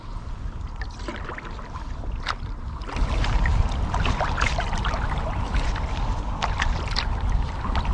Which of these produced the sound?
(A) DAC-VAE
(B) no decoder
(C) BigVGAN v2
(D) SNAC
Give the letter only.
B